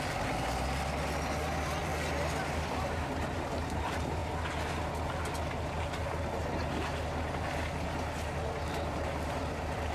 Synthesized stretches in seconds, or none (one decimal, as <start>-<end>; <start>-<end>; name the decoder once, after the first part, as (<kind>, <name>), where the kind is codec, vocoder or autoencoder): 0.0-1.9 (vocoder, BigVGAN v2); 2.5-4.2; 8.9-9.9